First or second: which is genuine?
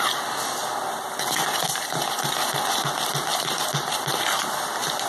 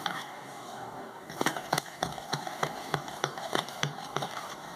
first